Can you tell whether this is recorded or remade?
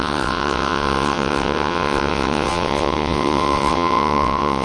remade